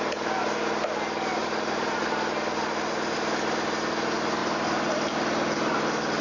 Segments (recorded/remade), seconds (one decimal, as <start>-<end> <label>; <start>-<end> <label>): 0.0-1.4 recorded; 1.4-2.0 remade; 2.0-4.4 recorded; 4.4-5.8 remade; 5.8-6.2 recorded